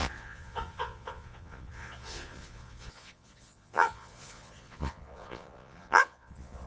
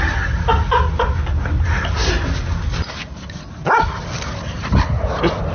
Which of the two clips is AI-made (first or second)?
first